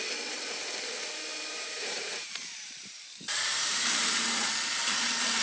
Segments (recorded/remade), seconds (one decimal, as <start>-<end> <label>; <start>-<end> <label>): 0.0-1.3 recorded; 1.3-4.5 remade; 4.5-5.4 recorded